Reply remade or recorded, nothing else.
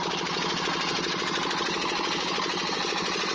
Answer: recorded